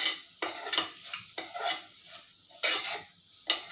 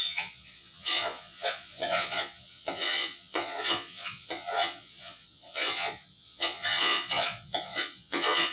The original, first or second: first